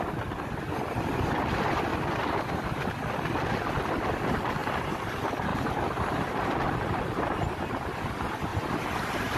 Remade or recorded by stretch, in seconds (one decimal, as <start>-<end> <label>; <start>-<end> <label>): 0.0-5.5 recorded; 5.5-7.1 remade; 7.1-9.4 recorded